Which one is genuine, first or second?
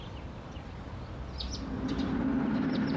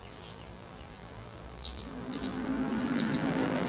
first